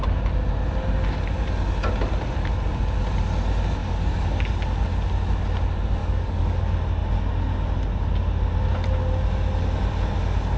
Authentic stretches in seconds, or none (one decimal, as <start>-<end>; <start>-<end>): 0.0-3.8; 4.5-6.0; 6.6-10.6